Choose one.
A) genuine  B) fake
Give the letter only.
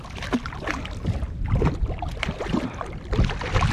A